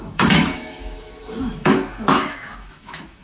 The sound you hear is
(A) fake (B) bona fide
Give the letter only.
A